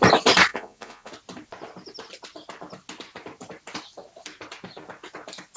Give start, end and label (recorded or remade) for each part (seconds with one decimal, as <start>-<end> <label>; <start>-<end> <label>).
0.0-0.5 recorded; 0.5-1.1 remade; 1.1-5.6 recorded